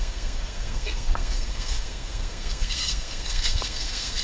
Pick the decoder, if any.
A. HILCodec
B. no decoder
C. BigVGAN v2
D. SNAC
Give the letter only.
D